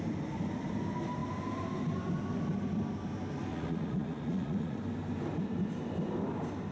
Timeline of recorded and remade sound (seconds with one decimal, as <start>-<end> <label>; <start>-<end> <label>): 0.0-3.5 recorded; 3.5-4.8 remade; 4.8-6.7 recorded

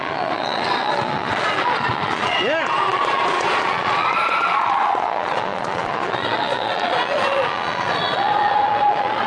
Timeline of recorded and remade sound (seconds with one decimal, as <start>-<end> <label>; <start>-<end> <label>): 0.0-9.3 remade